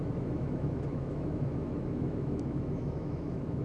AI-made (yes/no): yes